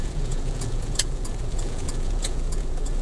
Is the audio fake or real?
fake